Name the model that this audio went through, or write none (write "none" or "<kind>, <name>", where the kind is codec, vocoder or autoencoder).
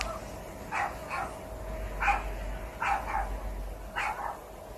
none